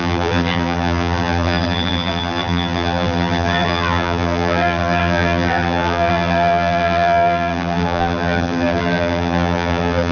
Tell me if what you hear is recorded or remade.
remade